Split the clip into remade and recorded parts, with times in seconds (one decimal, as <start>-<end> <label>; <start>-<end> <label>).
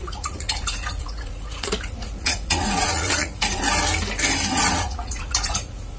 0.0-3.6 remade; 3.6-4.5 recorded; 4.5-6.0 remade